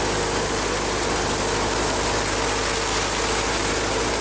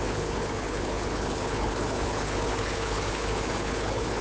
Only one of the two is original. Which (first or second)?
first